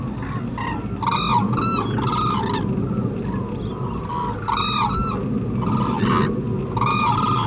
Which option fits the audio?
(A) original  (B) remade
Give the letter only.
A